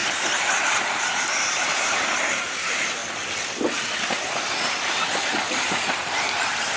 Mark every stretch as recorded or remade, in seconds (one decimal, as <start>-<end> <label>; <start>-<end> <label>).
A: 0.0-3.0 remade; 3.0-5.9 recorded; 5.9-6.8 remade